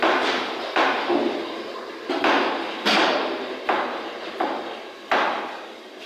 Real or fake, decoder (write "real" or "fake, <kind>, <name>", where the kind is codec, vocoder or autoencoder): real